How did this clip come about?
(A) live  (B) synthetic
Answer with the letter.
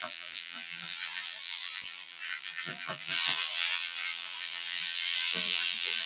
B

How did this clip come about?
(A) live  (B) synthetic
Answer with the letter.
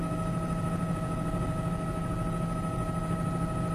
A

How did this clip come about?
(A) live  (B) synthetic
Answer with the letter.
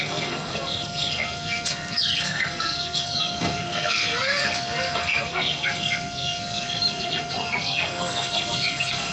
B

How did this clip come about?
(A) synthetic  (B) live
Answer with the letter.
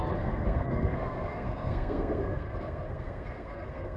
A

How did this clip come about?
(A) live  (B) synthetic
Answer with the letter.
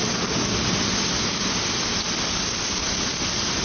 A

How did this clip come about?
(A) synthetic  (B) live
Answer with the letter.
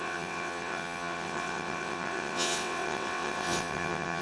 A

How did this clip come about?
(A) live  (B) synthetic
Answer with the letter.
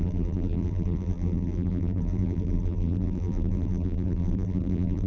B